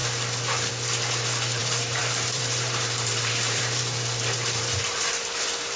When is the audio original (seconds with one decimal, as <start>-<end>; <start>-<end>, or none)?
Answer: 0.0-1.6; 5.1-5.8